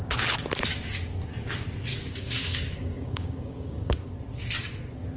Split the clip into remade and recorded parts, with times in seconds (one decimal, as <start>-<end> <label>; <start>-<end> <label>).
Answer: 0.0-1.9 recorded; 1.9-4.1 remade; 4.1-5.2 recorded